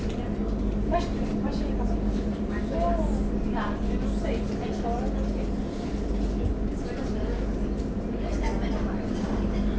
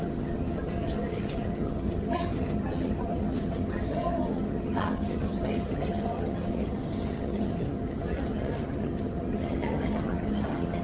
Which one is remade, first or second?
second